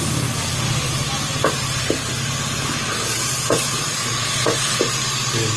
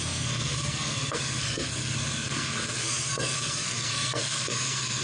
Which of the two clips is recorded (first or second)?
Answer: first